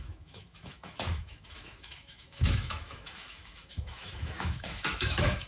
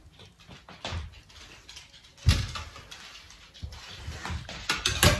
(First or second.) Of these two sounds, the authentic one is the second